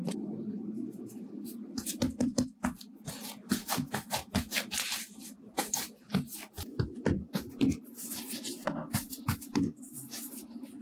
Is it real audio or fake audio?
fake